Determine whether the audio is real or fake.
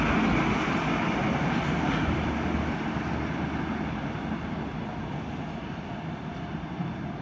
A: real